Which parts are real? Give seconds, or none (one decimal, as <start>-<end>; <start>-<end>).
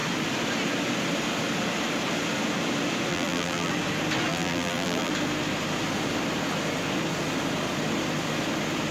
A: 0.0-3.1; 3.7-4.3; 5.1-8.9